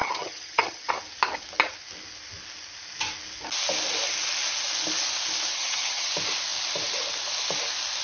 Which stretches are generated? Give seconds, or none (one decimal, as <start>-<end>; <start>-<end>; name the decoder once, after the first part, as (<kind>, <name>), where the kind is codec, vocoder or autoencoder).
0.0-0.9 (vocoder, HiFi-GAN); 5.5-6.1